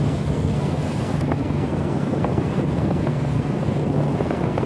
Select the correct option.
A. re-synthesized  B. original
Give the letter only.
A